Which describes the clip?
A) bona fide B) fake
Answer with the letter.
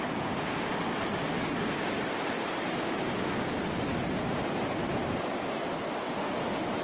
A